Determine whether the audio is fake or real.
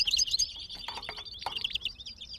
fake